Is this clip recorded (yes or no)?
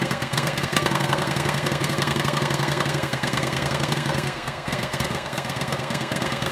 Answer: no